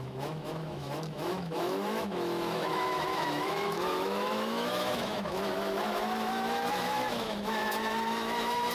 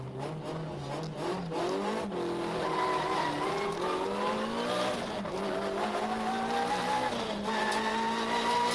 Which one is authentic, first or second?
second